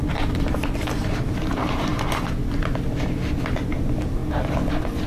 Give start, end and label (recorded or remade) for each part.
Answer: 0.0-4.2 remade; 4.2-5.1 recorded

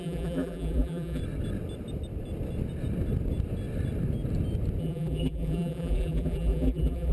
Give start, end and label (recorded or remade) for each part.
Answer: 0.0-1.2 remade; 1.2-4.8 recorded; 4.8-7.1 remade